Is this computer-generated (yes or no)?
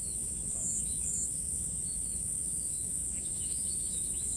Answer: yes